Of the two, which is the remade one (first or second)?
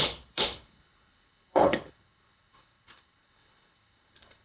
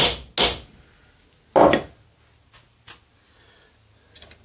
first